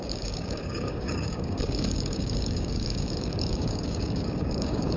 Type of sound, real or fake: fake